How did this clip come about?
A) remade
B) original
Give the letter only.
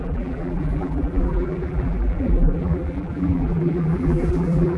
A